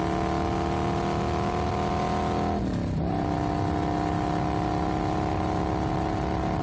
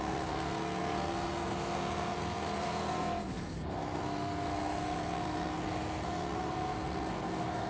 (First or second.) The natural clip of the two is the first